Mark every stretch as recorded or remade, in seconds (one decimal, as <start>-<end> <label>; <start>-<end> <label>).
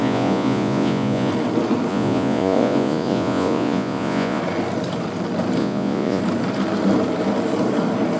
0.0-1.3 remade; 1.3-1.9 recorded; 1.9-4.4 remade; 4.4-5.6 recorded; 5.6-6.2 remade; 6.2-8.2 recorded